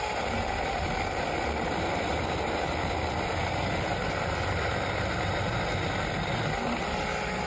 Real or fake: real